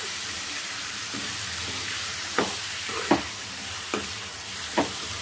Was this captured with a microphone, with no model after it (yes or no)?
no